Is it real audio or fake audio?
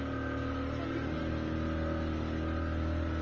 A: real